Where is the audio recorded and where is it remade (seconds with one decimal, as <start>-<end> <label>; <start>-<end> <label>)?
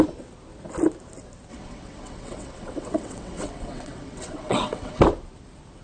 0.0-1.5 recorded; 1.5-5.0 remade; 5.0-5.8 recorded